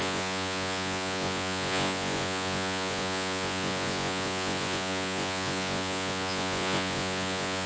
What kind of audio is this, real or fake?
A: fake